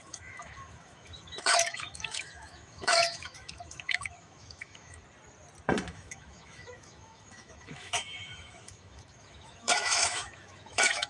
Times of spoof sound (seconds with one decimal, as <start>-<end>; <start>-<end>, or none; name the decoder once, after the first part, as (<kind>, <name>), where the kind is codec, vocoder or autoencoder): 0.0-5.0 (autoencoder, DAC-VAE); 5.9-11.1